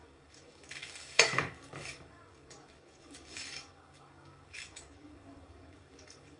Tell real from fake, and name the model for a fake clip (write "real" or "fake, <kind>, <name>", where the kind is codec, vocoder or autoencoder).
fake, codec, DAC